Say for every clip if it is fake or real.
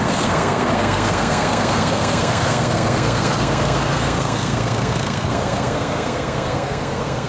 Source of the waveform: fake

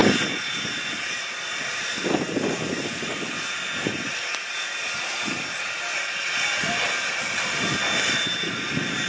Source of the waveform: real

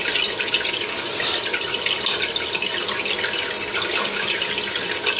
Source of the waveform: real